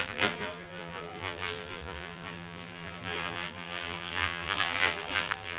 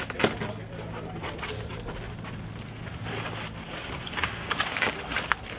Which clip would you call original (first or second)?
second